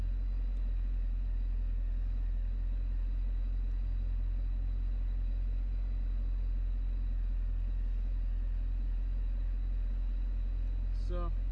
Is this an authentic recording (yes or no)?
yes